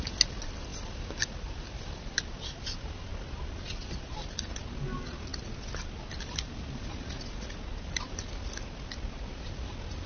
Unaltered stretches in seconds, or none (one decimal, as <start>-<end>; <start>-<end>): 0.0-10.1